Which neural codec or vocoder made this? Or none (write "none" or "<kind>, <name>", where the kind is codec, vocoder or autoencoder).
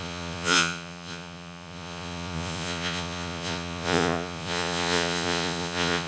vocoder, Vocos